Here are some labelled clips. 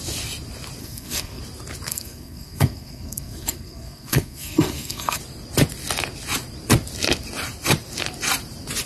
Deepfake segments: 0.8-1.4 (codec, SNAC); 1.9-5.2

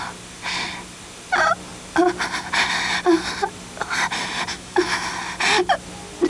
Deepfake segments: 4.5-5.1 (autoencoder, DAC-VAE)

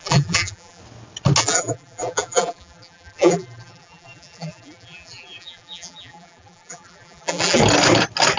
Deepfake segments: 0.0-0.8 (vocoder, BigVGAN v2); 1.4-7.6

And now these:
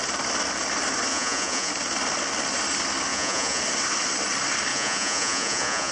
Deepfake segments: 1.1-1.7 (vocoder, Vocos); 3.1-3.6; 4.7-5.9

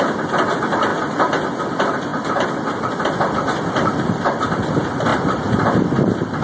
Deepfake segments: 0.0-0.9 (vocoder, BigVGAN v2); 1.6-6.4